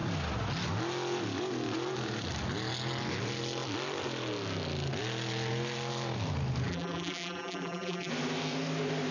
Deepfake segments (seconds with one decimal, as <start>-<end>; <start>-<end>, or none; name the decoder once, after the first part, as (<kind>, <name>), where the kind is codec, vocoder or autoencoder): 6.7-8.1 (vocoder, BigVGAN v2)